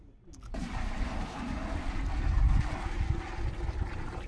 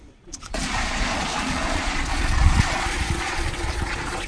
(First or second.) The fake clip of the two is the second